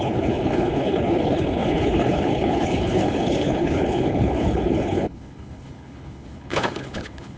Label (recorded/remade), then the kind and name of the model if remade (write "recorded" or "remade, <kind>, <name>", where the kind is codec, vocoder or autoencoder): remade, codec, HILCodec